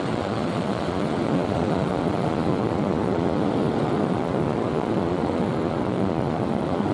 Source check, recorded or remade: remade